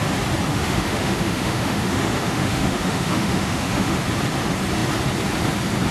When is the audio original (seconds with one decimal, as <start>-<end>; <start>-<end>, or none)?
0.0-0.5; 4.0-5.9